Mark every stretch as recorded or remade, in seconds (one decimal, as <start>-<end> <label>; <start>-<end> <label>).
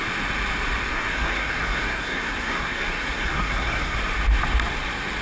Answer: 0.0-0.9 recorded; 0.9-4.0 remade; 4.0-5.2 recorded